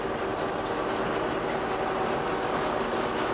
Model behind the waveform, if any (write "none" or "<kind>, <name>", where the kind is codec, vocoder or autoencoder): none